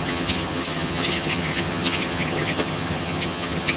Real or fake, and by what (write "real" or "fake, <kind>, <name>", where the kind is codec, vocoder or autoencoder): fake, vocoder, HiFi-GAN